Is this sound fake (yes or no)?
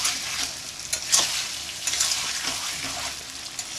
no